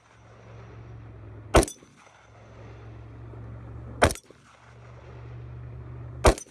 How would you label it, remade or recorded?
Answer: recorded